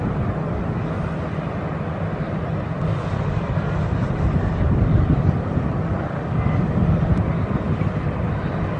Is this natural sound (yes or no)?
yes